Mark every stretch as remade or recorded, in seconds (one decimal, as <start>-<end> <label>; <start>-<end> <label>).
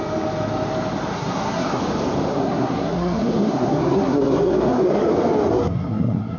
0.0-1.1 recorded; 1.1-1.8 remade; 1.8-2.3 recorded; 2.3-5.1 remade; 5.1-5.5 recorded; 5.5-6.4 remade